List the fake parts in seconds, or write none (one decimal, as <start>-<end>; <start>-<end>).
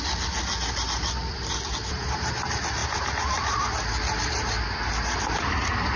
none